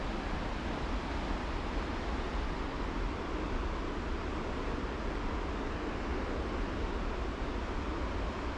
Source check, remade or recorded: recorded